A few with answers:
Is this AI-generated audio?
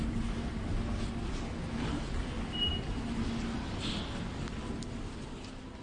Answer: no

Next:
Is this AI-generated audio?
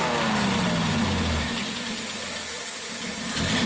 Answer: no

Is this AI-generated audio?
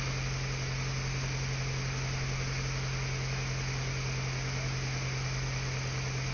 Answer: no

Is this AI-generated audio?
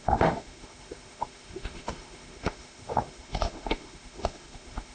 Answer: yes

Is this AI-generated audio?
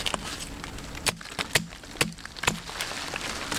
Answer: no